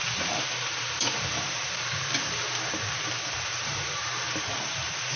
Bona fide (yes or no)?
no